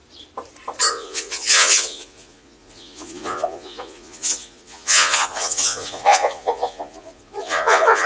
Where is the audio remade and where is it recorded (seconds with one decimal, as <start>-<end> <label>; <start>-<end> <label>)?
0.0-0.9 recorded; 0.9-8.1 remade